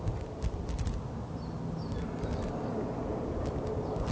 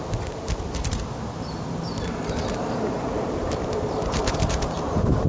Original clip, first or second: first